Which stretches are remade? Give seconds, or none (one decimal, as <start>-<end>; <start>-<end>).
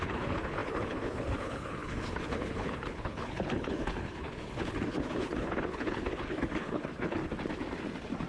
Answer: 0.0-7.2